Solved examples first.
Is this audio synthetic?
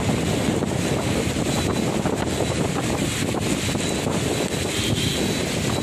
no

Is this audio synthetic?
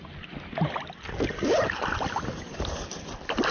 no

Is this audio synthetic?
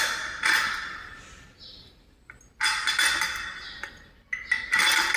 no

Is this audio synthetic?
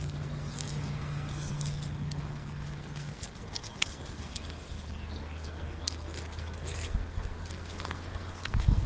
yes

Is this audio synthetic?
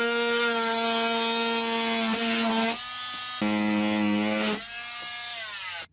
no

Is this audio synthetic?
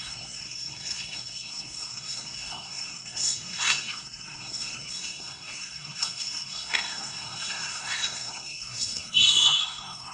yes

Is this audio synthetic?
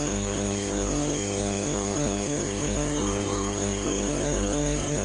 yes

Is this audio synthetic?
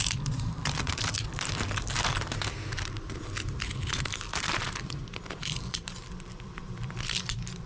yes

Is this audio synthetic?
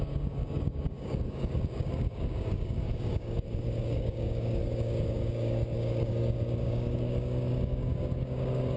yes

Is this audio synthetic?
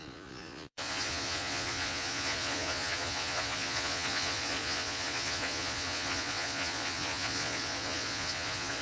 yes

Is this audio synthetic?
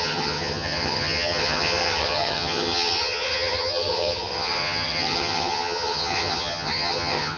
yes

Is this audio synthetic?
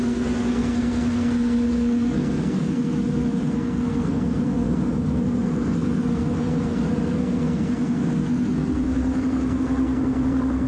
yes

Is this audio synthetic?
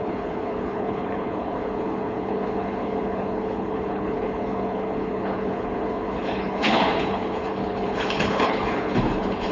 yes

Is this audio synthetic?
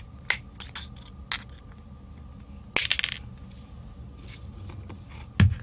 no